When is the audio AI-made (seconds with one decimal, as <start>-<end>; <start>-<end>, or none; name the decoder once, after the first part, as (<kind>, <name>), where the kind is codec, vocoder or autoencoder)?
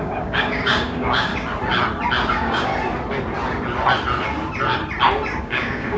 0.0-1.3 (codec, DAC); 2.3-2.7; 5.4-6.0